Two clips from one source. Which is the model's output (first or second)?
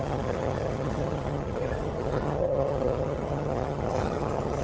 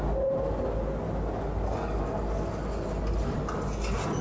first